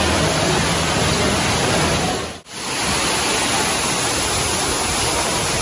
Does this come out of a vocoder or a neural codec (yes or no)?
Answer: no